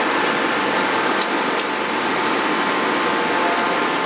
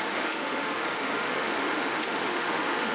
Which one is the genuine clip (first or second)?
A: first